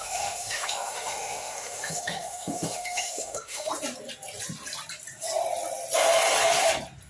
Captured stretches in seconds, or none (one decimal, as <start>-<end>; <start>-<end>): 3.7-7.1